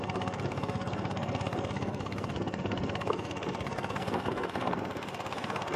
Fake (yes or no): yes